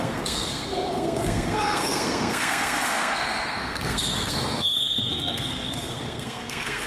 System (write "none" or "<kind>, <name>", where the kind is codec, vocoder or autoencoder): codec, SNAC